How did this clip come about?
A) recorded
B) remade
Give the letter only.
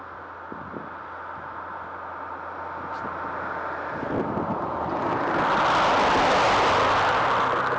A